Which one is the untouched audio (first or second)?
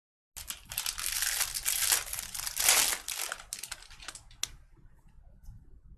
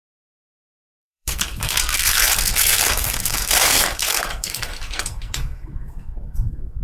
first